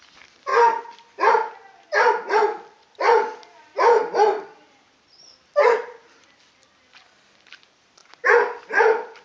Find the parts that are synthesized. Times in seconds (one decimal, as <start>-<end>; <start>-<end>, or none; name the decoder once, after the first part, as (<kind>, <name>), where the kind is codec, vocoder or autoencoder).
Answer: 0.0-0.5 (vocoder, BigVGAN v2); 5.3-8.0; 8.6-9.2